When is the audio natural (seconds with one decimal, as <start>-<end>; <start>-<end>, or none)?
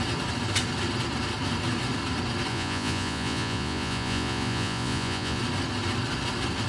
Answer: 0.0-2.5; 5.4-6.7